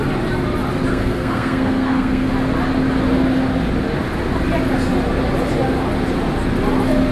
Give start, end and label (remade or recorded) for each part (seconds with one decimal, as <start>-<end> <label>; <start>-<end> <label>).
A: 0.0-0.9 recorded; 0.9-2.3 remade; 2.3-7.1 recorded